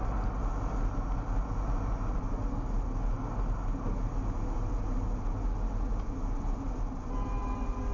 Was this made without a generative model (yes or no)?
yes